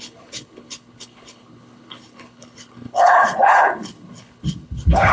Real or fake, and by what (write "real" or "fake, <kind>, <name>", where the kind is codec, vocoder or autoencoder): fake, codec, HILCodec